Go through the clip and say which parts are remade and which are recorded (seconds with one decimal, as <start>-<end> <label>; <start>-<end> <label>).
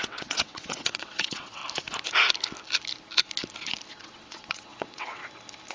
0.0-1.6 remade; 1.6-3.9 recorded; 3.9-5.2 remade; 5.2-5.7 recorded